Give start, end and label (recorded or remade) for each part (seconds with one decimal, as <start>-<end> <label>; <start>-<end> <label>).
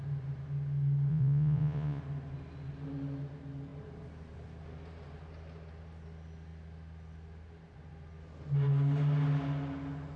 0.0-1.1 recorded; 1.1-2.0 remade; 2.0-10.2 recorded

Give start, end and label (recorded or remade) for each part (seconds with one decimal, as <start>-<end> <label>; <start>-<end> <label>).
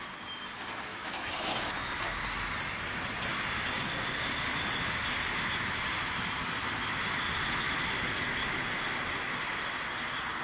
0.0-0.9 recorded; 0.9-1.9 remade; 1.9-10.4 recorded